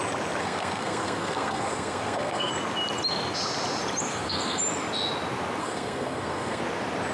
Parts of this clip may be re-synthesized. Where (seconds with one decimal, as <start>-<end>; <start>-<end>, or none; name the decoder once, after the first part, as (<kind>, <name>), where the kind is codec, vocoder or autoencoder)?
0.4-2.5 (codec, SNAC); 4.1-4.6; 5.6-6.6